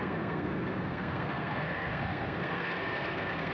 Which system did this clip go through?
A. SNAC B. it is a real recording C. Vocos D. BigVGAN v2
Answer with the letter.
A